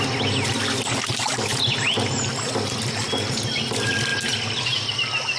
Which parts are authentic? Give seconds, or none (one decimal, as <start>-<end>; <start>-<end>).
0.0-5.4